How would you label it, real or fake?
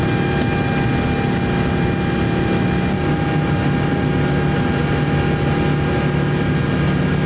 real